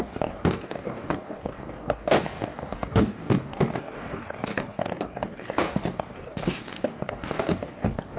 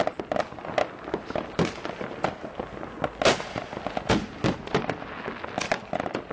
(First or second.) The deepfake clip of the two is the first